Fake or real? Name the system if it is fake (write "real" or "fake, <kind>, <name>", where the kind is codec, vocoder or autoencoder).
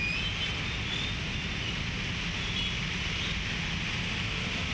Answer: real